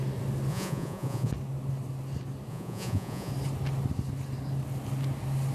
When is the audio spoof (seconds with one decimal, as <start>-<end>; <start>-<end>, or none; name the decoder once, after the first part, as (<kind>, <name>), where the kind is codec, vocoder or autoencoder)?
0.5-1.3 (vocoder, Vocos); 2.5-3.3